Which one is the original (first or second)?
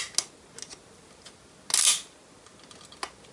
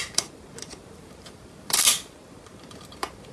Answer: first